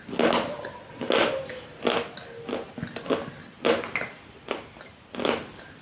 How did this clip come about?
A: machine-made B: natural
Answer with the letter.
B